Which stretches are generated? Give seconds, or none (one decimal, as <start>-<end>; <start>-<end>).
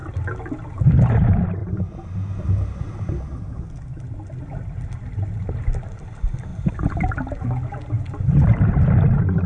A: none